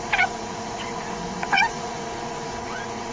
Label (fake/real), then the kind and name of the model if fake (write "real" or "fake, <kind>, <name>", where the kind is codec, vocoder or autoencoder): fake, vocoder, Vocos